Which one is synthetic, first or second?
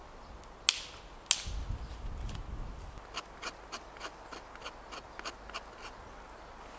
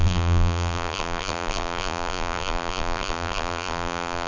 second